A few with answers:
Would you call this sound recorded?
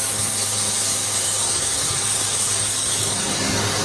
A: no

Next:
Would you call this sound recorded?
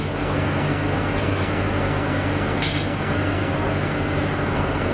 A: no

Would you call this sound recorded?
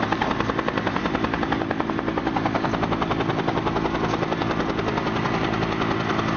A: yes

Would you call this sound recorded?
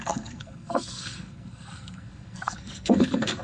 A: no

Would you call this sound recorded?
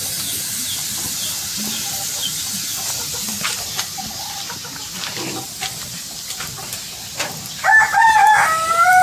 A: yes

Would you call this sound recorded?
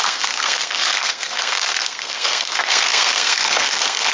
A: no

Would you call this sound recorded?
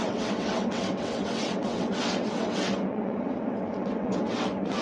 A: no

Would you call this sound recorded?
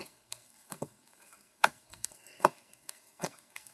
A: no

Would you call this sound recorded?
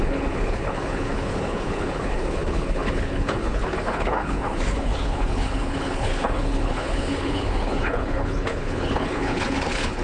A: no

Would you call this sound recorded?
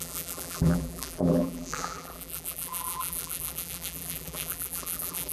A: no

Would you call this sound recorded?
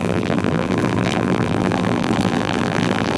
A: no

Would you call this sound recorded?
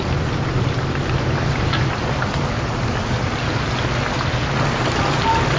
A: yes